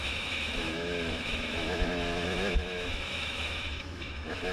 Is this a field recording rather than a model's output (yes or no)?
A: no